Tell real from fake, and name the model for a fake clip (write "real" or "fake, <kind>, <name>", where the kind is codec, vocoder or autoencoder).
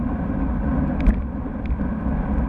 real